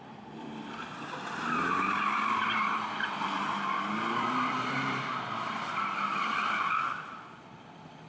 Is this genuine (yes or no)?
no